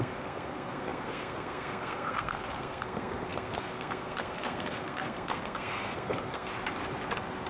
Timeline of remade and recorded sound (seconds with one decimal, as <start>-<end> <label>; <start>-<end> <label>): 0.0-6.5 remade; 6.5-7.5 recorded

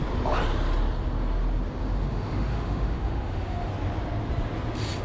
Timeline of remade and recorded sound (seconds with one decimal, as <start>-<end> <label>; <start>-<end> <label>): 0.0-1.8 recorded; 1.8-3.7 remade; 3.7-5.0 recorded